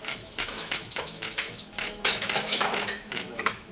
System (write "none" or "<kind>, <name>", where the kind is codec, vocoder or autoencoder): autoencoder, DAC-VAE